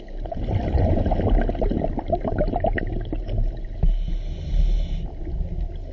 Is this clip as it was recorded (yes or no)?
yes